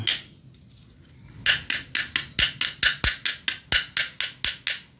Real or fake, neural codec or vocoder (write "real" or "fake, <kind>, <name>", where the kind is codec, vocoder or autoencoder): real